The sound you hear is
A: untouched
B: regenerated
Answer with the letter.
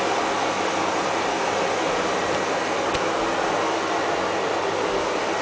A